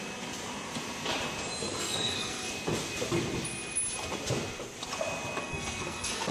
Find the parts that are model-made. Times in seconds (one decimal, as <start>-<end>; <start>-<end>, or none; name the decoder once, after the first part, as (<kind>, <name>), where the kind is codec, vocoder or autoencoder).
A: 1.8-2.5 (codec, SNAC); 5.4-6.3